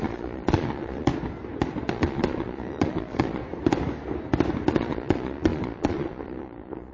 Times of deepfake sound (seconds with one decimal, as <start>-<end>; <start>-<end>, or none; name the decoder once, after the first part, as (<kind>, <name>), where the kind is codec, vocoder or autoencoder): 0.0-1.1 (vocoder, Vocos); 1.9-3.4; 4.7-6.9